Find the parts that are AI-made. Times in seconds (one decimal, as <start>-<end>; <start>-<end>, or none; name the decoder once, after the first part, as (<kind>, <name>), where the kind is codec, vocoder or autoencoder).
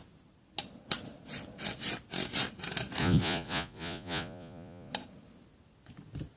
3.0-4.9 (vocoder, Vocos)